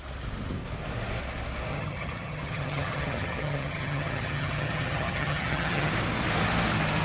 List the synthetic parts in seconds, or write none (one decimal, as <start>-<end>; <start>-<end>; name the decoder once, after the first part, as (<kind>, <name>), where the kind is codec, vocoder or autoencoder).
1.7-5.9 (vocoder, HiFi-GAN)